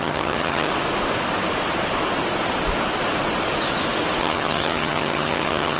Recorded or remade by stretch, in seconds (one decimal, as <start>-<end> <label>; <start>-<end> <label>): 0.0-0.7 remade; 0.7-4.2 recorded; 4.2-5.8 remade